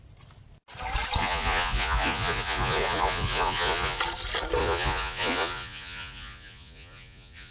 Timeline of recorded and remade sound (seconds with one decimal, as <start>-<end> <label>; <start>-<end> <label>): 0.0-1.2 recorded; 1.2-4.0 remade; 4.0-4.6 recorded; 4.6-7.5 remade